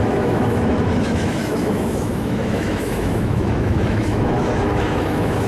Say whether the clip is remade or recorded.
remade